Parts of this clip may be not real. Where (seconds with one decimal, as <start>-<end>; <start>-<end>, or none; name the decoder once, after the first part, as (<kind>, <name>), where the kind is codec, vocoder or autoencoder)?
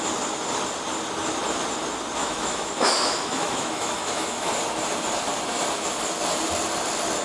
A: 2.2-4.5 (autoencoder, DAC-VAE)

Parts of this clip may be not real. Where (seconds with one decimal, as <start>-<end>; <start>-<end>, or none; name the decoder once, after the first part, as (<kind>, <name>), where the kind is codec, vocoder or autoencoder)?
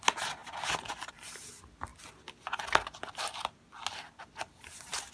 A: none